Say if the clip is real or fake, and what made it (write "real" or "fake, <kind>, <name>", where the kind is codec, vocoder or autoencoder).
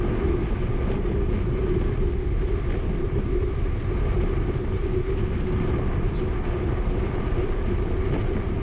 real